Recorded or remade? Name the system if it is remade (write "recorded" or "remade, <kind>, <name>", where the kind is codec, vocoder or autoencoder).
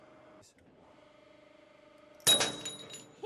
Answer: recorded